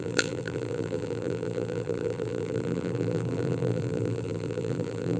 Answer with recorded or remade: remade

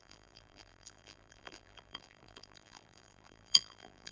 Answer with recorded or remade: remade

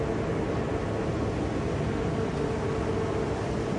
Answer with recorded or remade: recorded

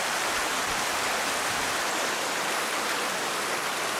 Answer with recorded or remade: recorded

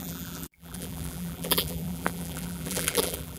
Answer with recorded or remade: remade